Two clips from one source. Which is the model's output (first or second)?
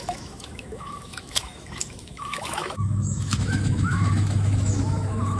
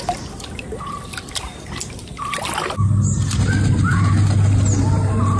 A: first